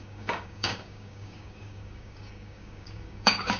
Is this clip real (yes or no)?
no